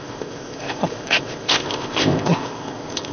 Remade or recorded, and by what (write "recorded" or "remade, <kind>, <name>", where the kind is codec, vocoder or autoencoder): remade, codec, ZipCodec